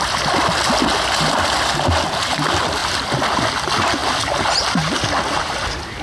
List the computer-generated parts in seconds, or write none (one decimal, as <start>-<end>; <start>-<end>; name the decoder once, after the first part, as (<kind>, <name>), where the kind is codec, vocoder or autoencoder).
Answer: none